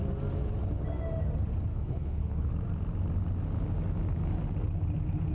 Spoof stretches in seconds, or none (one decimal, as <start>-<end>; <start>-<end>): 1.7-2.5